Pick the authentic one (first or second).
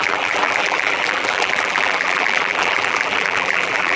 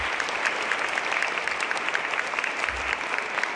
second